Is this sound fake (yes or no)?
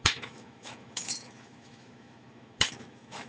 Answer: yes